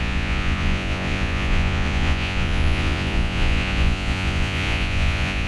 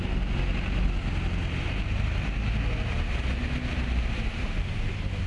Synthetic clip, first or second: first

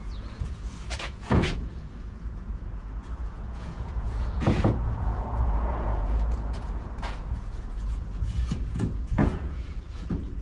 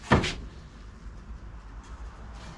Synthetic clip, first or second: first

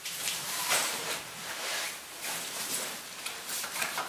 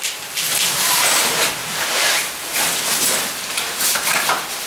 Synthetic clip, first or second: first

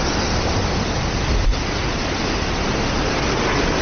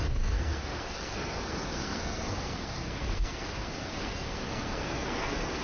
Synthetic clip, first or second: second